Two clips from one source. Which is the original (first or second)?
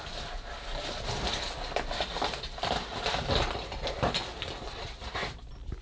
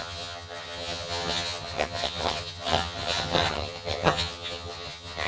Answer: first